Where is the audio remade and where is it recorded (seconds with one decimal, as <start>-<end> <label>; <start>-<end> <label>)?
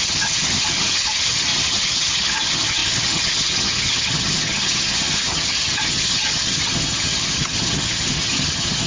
0.0-8.9 remade